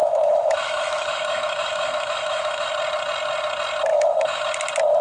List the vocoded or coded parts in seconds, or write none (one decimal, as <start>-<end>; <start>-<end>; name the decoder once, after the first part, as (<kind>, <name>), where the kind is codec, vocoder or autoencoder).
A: 0.0-2.7 (autoencoder, DAC-VAE); 3.9-4.4